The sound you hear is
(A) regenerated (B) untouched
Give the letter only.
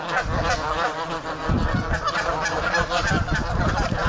B